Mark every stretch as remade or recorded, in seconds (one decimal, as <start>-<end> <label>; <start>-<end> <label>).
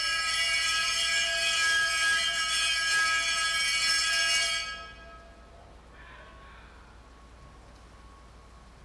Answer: 0.0-8.8 recorded